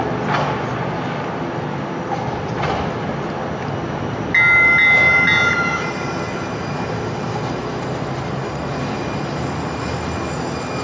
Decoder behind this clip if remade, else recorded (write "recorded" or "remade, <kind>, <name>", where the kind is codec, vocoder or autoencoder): recorded